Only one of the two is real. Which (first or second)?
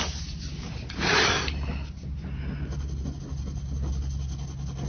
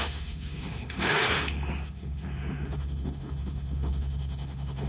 first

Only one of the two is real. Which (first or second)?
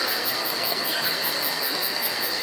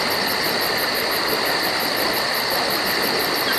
second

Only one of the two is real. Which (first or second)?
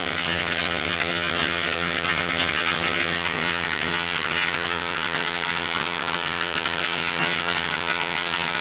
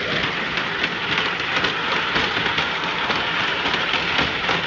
second